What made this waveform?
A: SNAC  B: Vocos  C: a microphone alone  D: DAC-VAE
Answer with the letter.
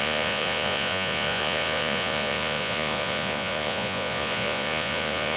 B